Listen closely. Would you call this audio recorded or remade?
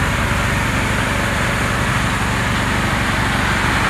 recorded